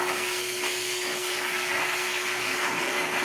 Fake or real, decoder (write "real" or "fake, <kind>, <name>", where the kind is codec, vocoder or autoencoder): fake, codec, SNAC